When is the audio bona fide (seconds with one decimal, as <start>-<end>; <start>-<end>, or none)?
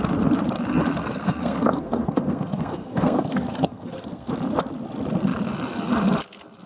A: 0.0-1.0; 4.3-6.7